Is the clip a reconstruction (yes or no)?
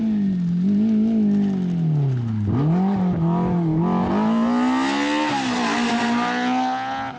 no